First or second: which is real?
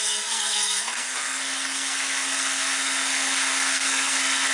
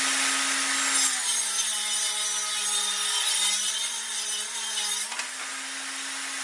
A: second